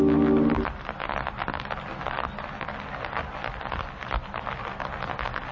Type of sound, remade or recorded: recorded